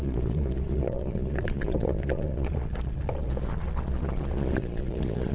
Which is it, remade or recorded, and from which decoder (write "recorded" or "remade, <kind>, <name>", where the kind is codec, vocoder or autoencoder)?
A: remade, vocoder, Vocos